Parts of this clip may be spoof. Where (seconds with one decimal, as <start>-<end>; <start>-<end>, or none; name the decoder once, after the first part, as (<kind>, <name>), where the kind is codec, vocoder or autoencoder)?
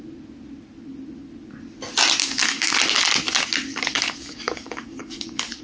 2.2-2.7 (codec, DAC); 3.7-5.6